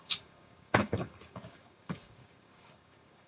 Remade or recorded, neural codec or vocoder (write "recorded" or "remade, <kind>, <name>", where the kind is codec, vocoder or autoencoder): remade, codec, DAC